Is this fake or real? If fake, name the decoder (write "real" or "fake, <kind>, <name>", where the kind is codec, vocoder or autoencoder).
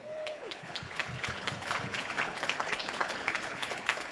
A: fake, codec, HILCodec